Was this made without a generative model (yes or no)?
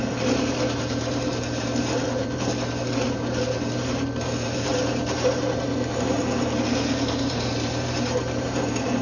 no